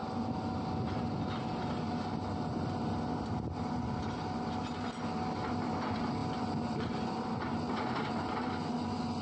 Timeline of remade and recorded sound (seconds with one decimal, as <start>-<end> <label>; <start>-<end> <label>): 0.0-9.2 recorded